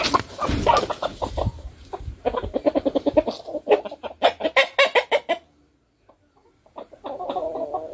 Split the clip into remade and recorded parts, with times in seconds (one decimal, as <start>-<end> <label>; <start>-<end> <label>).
0.0-1.1 recorded; 1.1-4.1 remade; 4.1-7.9 recorded